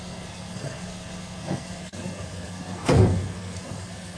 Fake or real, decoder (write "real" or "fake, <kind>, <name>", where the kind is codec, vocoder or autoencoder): fake, codec, SNAC